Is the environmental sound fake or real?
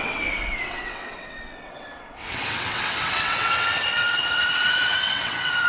fake